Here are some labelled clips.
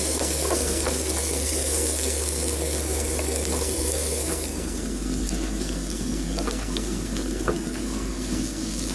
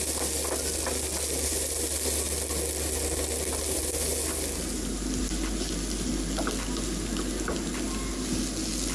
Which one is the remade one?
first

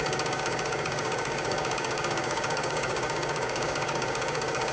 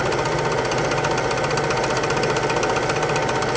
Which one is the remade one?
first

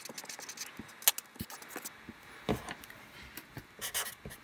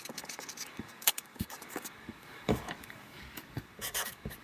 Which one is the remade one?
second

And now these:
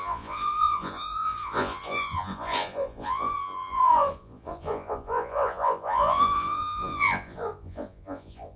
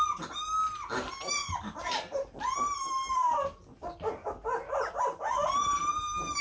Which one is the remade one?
first